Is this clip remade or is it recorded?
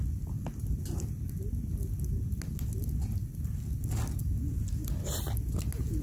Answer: recorded